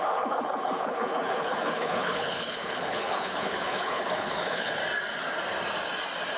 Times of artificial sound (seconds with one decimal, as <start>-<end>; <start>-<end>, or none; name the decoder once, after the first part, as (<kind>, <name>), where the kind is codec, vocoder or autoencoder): 0.0-4.8 (codec, HILCodec)